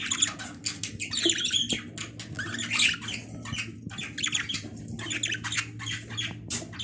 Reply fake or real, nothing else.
real